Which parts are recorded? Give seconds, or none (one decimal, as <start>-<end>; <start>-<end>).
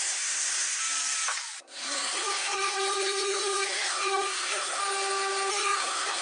0.8-1.6; 4.8-5.5